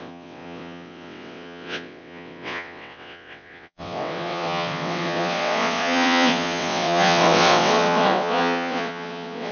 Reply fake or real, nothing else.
fake